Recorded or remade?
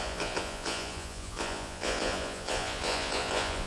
remade